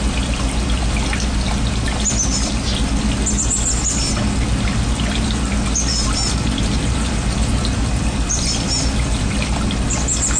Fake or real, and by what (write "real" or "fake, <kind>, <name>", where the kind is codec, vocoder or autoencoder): real